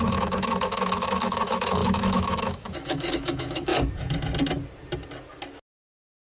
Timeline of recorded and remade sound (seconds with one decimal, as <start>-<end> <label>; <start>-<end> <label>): 0.0-3.7 remade; 3.7-6.4 recorded